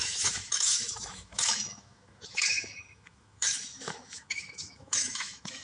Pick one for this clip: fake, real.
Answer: fake